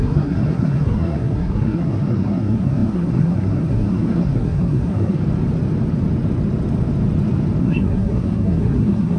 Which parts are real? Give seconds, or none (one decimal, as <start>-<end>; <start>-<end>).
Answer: 5.2-7.6